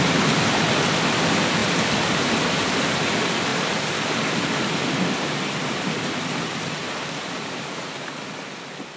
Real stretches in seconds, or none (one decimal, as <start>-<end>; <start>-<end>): 0.0-1.6; 2.5-3.5; 7.6-9.0